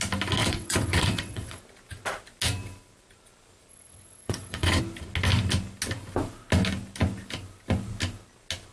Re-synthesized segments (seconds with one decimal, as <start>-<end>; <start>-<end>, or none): 0.4-1.6; 3.7-4.8